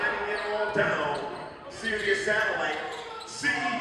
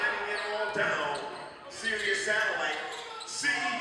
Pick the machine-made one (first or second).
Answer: first